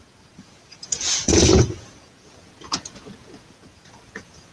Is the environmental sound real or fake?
fake